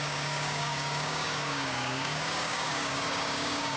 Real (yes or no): no